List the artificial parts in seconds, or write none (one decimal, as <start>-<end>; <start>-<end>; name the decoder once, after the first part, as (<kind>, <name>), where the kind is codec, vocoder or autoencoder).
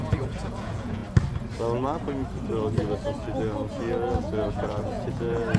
0.0-1.0 (vocoder, Vocos); 4.2-5.6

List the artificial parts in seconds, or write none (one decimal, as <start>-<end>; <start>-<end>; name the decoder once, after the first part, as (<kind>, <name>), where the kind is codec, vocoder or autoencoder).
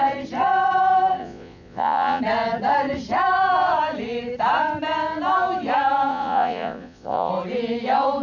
1.2-2.2 (vocoder, Vocos); 6.1-7.3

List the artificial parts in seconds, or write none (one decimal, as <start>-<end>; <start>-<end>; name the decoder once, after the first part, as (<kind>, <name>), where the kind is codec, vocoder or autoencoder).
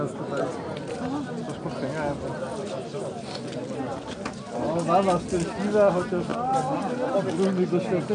none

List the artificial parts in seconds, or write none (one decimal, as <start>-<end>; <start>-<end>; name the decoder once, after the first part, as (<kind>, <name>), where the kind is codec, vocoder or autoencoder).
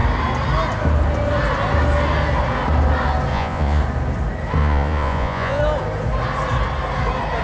3.3-3.8 (vocoder, Vocos); 4.6-5.6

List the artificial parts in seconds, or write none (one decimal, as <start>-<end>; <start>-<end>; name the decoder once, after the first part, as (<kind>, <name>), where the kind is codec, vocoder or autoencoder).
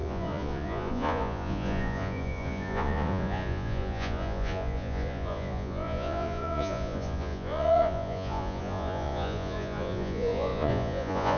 0.0-11.4 (vocoder, Vocos)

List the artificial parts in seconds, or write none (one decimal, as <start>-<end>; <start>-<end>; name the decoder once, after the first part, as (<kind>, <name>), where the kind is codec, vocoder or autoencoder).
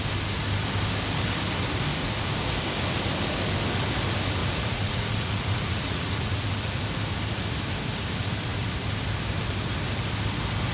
1.9-2.5 (vocoder, Vocos); 4.4-6.8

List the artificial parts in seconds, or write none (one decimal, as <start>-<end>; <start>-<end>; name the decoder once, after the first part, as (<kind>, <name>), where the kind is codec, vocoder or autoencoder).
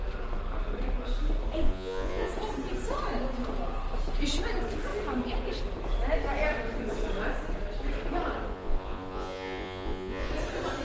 1.6-2.3 (vocoder, Vocos); 8.5-10.3